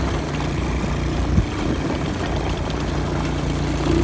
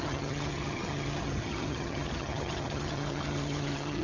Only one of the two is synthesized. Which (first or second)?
second